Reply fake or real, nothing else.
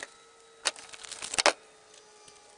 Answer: real